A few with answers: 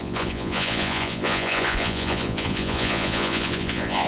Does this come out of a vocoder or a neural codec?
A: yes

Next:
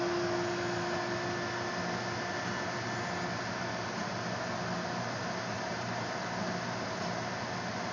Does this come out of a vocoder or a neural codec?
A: no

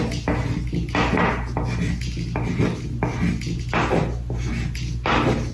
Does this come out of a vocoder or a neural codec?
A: no